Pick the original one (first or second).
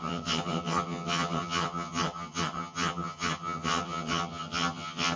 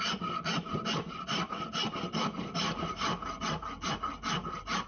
second